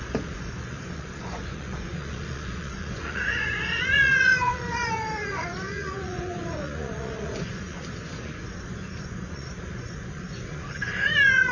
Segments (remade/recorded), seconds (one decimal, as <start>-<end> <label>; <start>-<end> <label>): 0.0-11.5 remade